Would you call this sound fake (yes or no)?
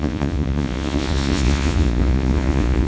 yes